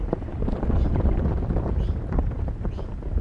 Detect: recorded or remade recorded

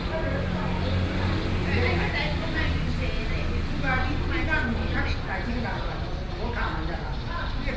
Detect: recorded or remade recorded